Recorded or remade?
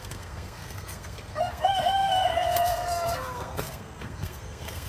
remade